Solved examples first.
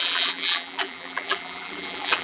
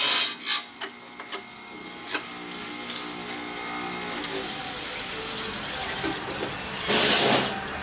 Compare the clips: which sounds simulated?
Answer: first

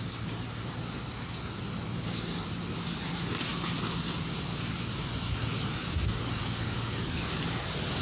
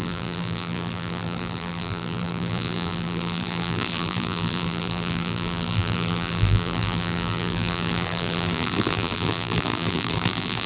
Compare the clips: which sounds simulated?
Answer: second